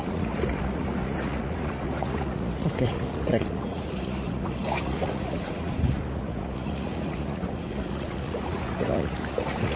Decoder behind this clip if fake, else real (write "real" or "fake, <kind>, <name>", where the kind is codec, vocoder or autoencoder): fake, vocoder, Vocos